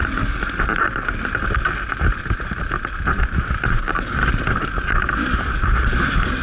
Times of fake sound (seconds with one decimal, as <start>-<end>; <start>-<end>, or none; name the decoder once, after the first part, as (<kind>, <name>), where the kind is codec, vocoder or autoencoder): 3.8-4.2 (codec, DAC); 5.8-6.4